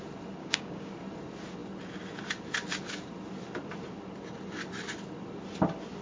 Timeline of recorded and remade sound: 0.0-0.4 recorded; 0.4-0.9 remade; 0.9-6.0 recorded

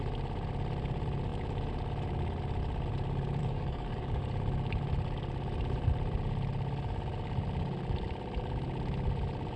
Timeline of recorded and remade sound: 0.0-3.4 recorded; 3.4-4.2 remade; 4.2-9.6 recorded

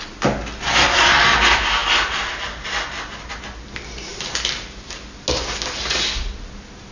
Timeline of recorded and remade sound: 0.0-6.9 recorded

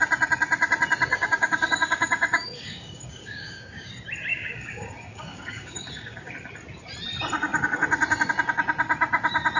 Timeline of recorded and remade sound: 0.0-1.1 recorded; 1.1-3.9 remade; 3.9-4.3 recorded; 4.3-6.3 remade; 6.3-9.6 recorded

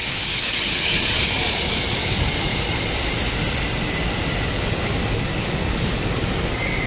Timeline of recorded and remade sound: 0.0-2.5 remade; 2.5-4.5 recorded; 4.5-6.9 remade